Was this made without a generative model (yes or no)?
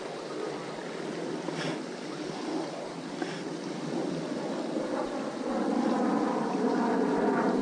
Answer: yes